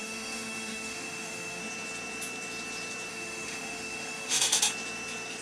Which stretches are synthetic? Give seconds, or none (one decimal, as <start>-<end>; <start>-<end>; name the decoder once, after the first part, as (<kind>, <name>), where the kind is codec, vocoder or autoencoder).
0.0-1.6 (autoencoder, DAC-VAE); 3.1-4.6

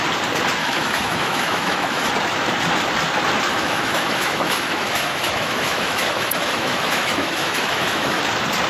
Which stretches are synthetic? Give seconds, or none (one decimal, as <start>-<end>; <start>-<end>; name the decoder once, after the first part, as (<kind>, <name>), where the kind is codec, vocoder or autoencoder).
0.6-2.1 (autoencoder, DAC-VAE); 3.5-8.2

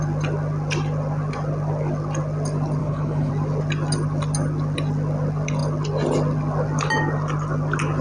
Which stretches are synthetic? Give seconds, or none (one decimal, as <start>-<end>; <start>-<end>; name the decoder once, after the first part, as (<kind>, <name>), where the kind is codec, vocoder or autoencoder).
2.8-3.3 (codec, HILCodec)

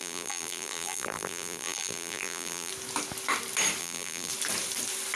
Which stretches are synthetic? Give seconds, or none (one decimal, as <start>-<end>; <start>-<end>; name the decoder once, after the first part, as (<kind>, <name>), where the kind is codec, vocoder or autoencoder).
0.0-2.7 (vocoder, BigVGAN v2); 3.8-4.3